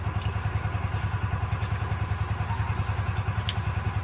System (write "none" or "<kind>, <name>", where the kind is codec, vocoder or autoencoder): none